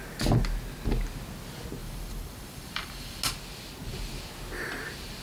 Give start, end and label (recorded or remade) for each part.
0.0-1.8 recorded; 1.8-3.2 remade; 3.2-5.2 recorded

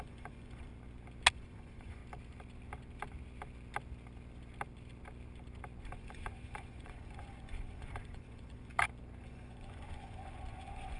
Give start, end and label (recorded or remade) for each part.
0.0-0.7 remade; 0.7-1.3 recorded; 1.3-2.0 remade; 2.0-5.8 recorded; 5.8-8.7 remade; 8.7-9.2 recorded; 9.2-11.0 remade

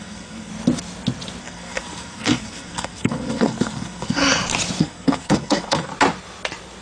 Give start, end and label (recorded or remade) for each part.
0.0-0.5 remade; 0.5-1.4 recorded; 1.4-4.2 remade; 4.2-4.8 recorded; 4.8-5.9 remade; 5.9-6.8 recorded

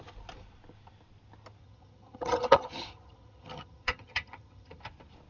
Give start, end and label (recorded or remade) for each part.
0.0-1.6 recorded; 1.6-4.8 remade; 4.8-5.3 recorded

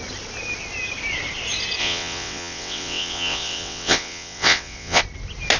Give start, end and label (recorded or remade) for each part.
0.0-1.8 recorded; 1.8-5.0 remade; 5.0-5.6 recorded

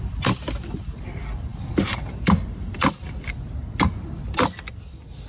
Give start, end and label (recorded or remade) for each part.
0.0-5.3 remade

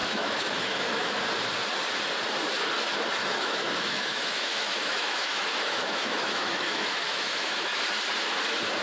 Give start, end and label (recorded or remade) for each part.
0.0-1.2 remade; 1.2-3.3 recorded; 3.3-7.8 remade; 7.8-8.8 recorded

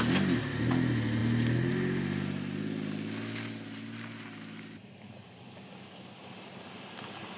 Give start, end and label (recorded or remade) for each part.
0.0-7.4 recorded